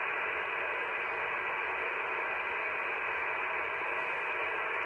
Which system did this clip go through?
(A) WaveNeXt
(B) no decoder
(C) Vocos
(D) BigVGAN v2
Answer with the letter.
B